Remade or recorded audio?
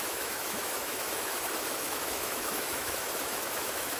remade